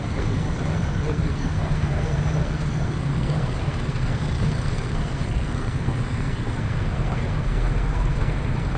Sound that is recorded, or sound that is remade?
remade